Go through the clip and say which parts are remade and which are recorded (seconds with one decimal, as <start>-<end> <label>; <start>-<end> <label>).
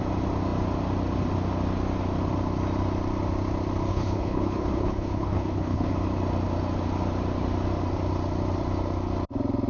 0.0-3.9 recorded; 3.9-5.9 remade; 5.9-9.7 recorded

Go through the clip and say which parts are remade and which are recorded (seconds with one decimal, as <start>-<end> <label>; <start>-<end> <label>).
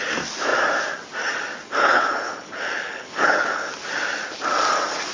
0.0-1.8 recorded; 1.8-3.7 remade; 3.7-5.1 recorded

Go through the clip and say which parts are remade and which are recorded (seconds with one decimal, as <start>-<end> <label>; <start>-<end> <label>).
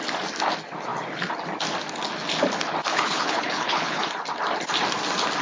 0.0-2.9 recorded; 2.9-4.1 remade; 4.1-5.4 recorded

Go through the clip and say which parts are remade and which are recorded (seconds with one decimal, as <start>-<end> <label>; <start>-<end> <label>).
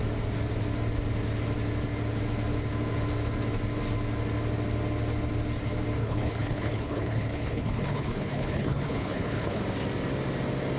0.0-6.0 recorded; 6.0-9.6 remade; 9.6-10.8 recorded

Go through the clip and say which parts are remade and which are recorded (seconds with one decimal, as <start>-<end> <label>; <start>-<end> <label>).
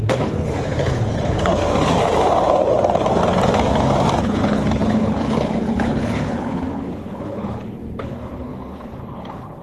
0.0-1.6 remade; 1.6-4.2 recorded; 4.2-9.6 remade